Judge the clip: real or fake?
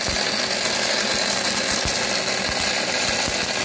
real